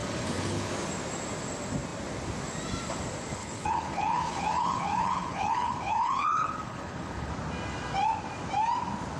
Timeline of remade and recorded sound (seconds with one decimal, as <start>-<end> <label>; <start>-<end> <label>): 0.0-0.7 remade; 0.7-3.4 recorded; 3.4-7.3 remade; 7.3-9.2 recorded